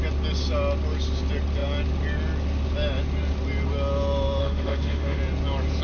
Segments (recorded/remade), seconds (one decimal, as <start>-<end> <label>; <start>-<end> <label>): 0.0-4.4 recorded; 4.4-5.2 remade; 5.2-5.8 recorded